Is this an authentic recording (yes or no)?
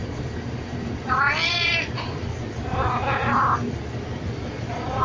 yes